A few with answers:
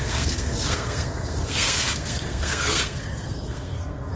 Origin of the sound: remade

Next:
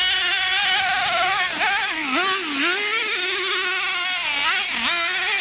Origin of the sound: recorded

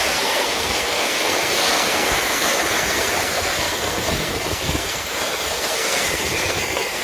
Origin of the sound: remade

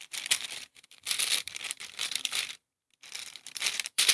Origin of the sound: remade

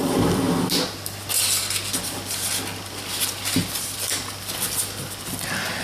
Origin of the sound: recorded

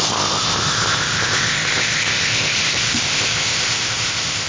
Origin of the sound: remade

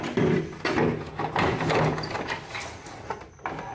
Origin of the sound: recorded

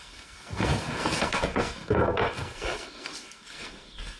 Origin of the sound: remade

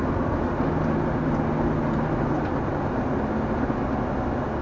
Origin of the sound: recorded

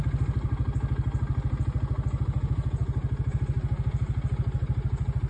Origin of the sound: recorded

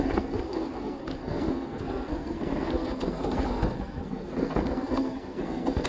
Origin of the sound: remade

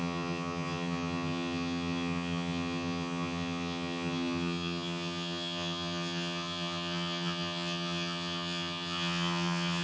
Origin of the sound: remade